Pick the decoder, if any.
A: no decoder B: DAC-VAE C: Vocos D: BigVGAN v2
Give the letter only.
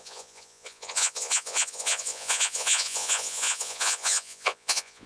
C